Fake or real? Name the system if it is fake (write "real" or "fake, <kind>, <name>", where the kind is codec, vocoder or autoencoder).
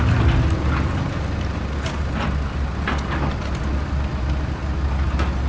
real